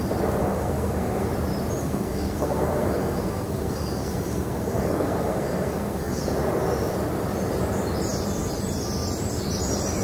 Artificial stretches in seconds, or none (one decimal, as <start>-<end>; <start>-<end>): 0.4-1.3; 1.8-6.2